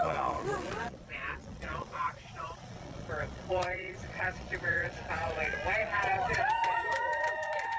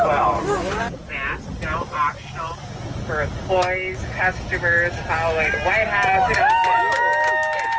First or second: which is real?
second